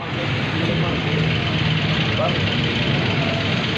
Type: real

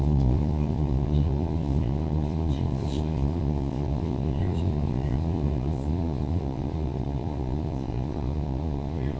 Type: fake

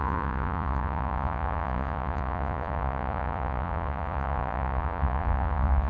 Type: fake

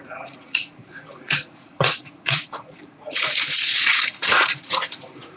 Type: fake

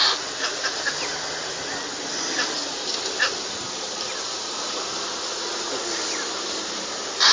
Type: real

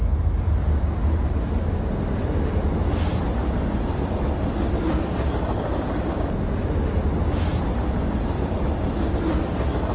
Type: real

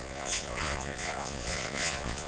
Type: fake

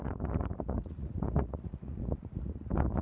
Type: fake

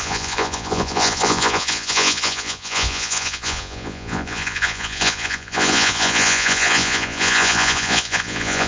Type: fake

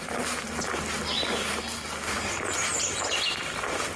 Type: real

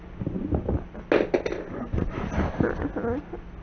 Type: real